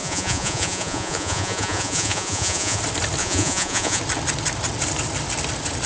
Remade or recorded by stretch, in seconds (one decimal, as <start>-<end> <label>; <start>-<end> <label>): 0.0-2.8 remade; 2.8-3.2 recorded; 3.2-4.0 remade; 4.0-5.9 recorded